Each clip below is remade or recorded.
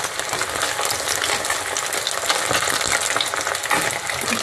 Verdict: recorded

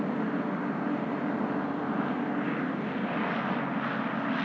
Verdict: recorded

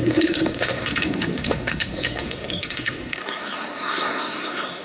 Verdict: remade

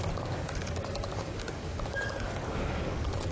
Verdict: remade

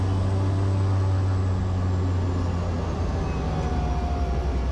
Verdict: recorded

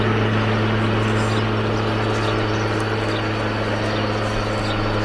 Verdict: recorded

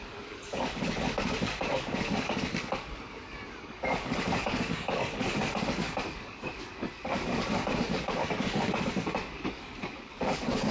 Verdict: remade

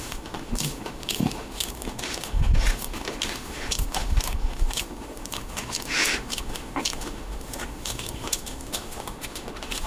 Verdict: remade